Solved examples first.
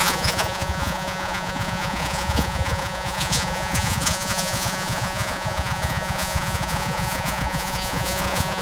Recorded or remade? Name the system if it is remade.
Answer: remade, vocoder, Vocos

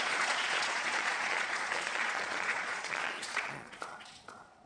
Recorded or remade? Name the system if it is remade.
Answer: remade, vocoder, Vocos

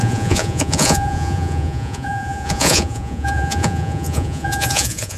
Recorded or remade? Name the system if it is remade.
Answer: remade, vocoder, Vocos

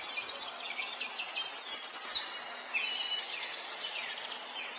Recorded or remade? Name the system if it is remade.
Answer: recorded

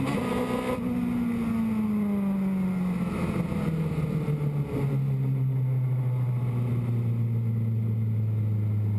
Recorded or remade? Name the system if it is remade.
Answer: recorded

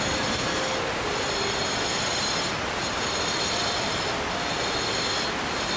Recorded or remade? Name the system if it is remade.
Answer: recorded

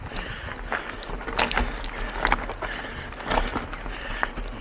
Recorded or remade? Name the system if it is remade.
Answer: recorded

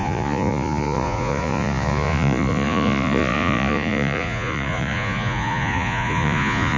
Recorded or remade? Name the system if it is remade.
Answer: remade, vocoder, Vocos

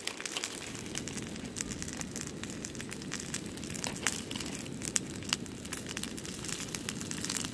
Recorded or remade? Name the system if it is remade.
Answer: recorded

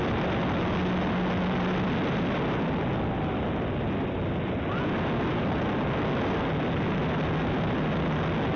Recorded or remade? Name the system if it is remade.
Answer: recorded